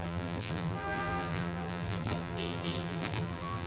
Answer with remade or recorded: remade